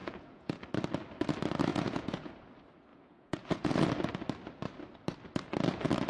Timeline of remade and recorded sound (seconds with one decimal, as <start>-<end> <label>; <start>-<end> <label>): 0.0-0.6 remade; 0.6-1.7 recorded; 1.7-2.3 remade; 2.3-2.9 recorded; 2.9-3.8 remade; 3.8-6.1 recorded